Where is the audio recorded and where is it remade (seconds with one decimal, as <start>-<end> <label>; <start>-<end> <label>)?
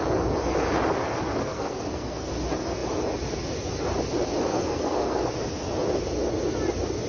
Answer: 0.0-1.4 recorded; 1.4-2.3 remade; 2.3-4.5 recorded; 4.5-5.3 remade; 5.3-7.1 recorded